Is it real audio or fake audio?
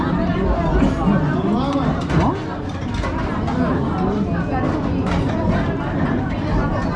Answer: real